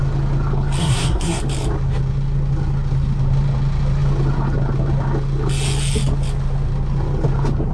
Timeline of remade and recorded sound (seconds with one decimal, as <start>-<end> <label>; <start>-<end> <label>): 0.0-0.8 recorded; 0.8-1.4 remade; 1.4-7.7 recorded